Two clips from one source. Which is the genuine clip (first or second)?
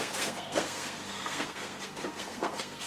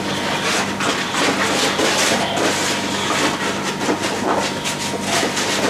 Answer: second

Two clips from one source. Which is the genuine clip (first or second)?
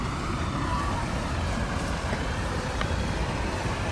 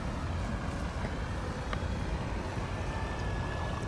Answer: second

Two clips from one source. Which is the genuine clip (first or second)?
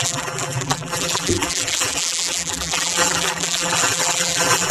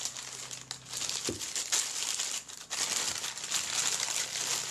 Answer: second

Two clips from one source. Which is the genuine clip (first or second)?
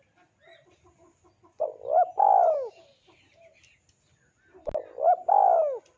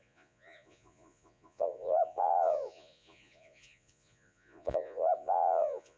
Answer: first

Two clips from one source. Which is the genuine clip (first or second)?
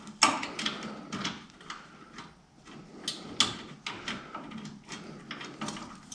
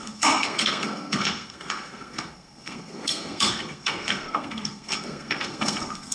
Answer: first